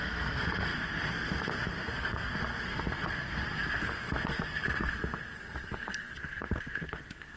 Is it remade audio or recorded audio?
remade